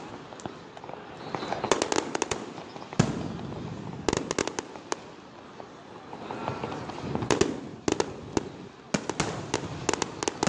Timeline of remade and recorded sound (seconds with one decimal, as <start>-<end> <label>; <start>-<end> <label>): 0.0-10.5 recorded